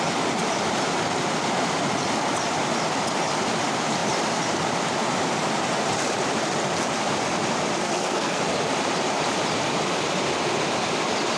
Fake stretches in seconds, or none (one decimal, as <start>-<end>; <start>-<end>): 7.8-8.4